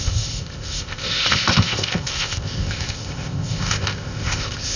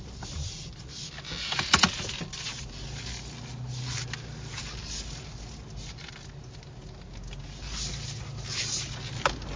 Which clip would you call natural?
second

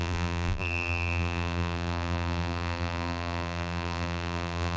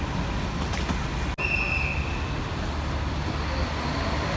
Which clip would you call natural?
second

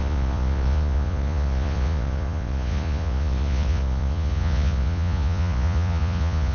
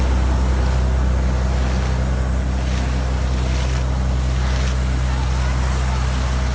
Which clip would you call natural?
second